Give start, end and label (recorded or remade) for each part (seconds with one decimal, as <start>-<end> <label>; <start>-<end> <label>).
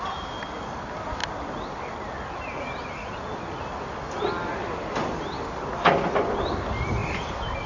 0.0-7.7 recorded